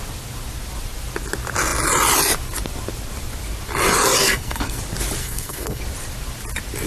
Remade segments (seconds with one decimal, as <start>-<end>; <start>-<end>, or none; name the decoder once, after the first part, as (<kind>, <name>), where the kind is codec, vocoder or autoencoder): 4.2-4.8 (codec, SNAC); 5.2-5.8